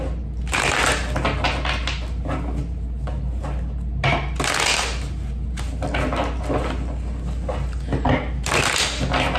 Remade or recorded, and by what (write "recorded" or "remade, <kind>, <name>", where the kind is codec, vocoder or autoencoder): recorded